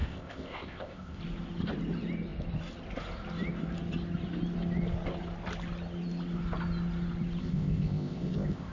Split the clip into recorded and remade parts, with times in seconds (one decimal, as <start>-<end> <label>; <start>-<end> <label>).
0.0-1.2 remade; 1.2-7.4 recorded; 7.4-8.7 remade